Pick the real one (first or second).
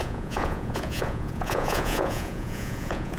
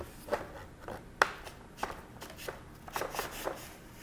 second